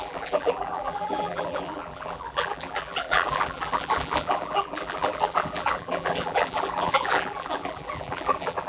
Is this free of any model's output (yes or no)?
no